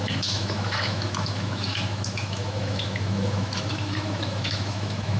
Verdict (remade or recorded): remade